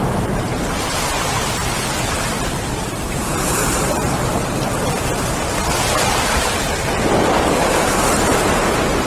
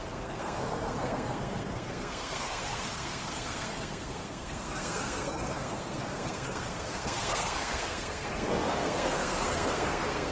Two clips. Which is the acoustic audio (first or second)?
first